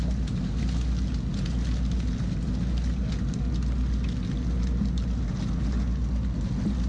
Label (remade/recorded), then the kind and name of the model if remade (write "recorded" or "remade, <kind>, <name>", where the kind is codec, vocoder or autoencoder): recorded